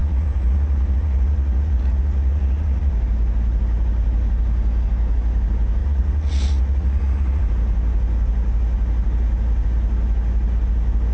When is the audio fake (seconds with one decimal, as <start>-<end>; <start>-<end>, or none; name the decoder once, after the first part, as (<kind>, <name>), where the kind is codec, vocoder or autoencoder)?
0.0-2.9 (vocoder, Vocos); 5.8-7.4